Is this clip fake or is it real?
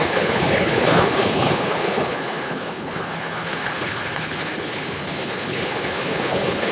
fake